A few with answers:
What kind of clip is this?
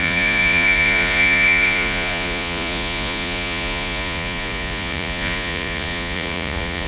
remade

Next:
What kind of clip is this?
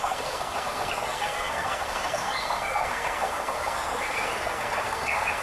remade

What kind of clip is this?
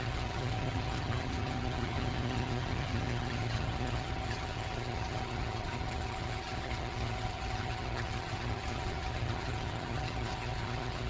remade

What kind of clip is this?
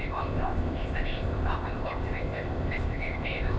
remade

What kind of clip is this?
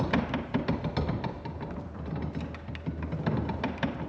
recorded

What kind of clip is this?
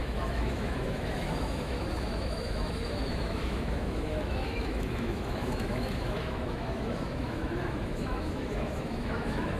remade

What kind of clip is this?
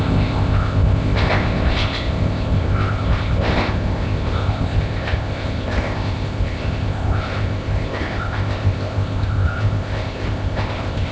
remade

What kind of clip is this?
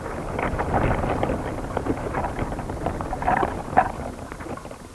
remade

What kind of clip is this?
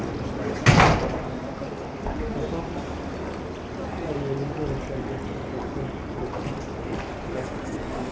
recorded